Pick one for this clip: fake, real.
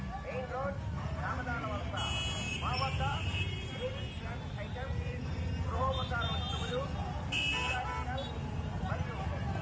real